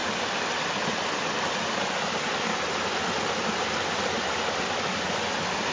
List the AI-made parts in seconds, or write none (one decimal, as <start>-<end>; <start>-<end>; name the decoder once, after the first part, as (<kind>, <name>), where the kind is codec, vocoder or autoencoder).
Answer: none